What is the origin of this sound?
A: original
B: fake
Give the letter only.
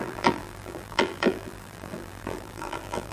B